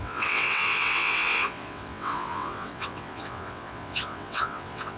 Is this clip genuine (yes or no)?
no